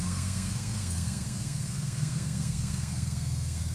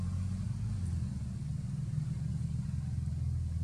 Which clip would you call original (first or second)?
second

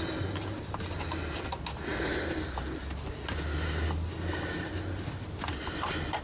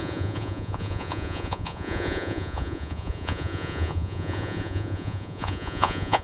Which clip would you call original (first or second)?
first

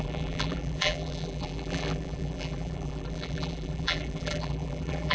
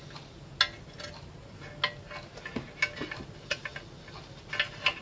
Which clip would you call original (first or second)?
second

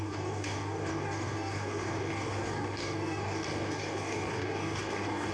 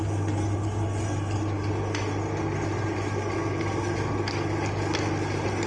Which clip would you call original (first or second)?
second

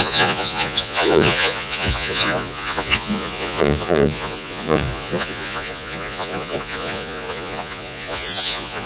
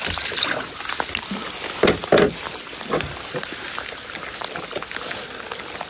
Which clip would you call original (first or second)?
second